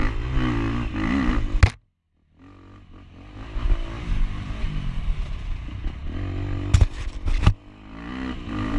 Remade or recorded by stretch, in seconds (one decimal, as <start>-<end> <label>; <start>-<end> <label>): 0.0-8.8 recorded